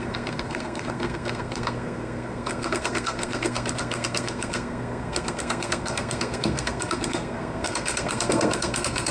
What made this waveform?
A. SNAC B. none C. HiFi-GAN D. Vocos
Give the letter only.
A